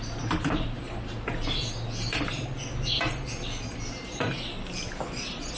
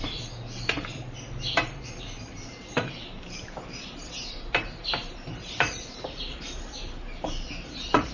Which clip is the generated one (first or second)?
second